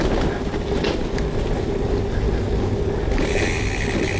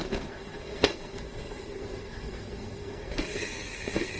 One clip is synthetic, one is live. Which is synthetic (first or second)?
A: second